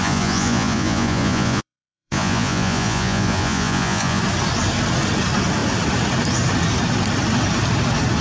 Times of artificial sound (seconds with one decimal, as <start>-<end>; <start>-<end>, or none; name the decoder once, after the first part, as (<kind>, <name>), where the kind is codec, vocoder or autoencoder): 0.0-4.2 (vocoder, Vocos)